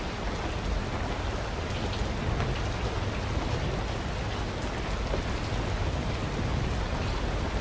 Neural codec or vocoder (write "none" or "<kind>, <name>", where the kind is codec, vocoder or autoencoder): none